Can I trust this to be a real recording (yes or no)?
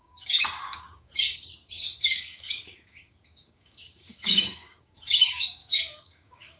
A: no